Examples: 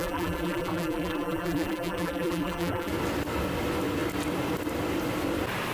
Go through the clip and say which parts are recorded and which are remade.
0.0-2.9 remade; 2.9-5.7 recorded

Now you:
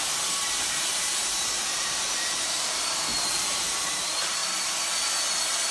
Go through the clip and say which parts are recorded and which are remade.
0.0-0.6 recorded; 0.6-4.4 remade; 4.4-5.7 recorded

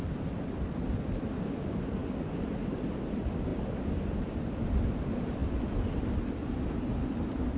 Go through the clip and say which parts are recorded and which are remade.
0.0-2.0 remade; 2.0-2.8 recorded; 2.8-5.4 remade; 5.4-6.5 recorded; 6.5-7.6 remade

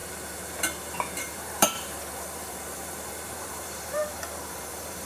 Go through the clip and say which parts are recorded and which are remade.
0.0-1.2 recorded; 1.2-4.0 remade; 4.0-4.5 recorded; 4.5-5.1 remade